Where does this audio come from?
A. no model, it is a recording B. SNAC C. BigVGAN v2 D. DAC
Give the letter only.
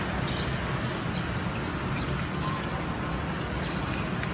A